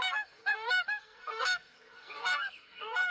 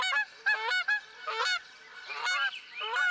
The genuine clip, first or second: second